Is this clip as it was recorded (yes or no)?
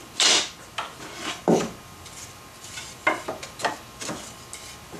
yes